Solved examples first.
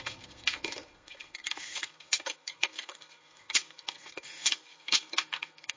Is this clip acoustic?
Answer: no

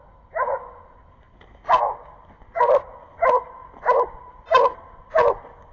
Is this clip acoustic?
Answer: yes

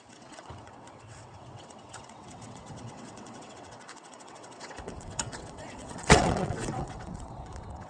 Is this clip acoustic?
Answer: no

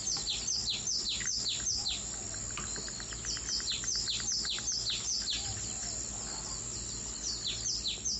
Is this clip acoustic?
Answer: yes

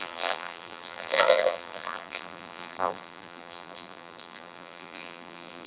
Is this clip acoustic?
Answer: no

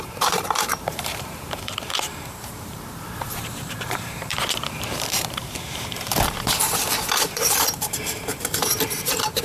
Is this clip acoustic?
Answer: no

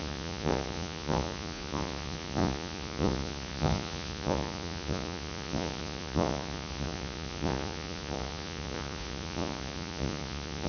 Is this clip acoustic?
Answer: no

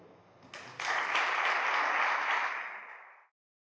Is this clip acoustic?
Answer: yes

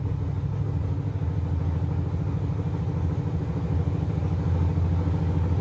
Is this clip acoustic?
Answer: yes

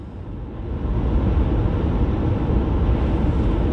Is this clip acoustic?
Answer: yes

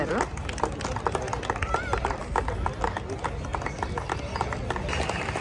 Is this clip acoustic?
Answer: yes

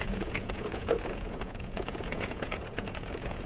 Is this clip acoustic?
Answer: no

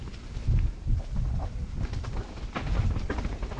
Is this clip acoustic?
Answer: yes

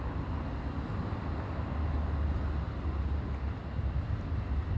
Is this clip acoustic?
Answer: yes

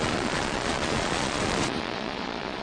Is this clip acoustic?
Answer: no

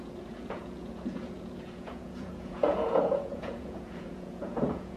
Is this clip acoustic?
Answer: no